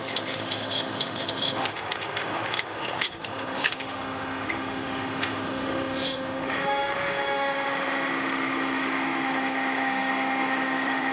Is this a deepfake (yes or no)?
yes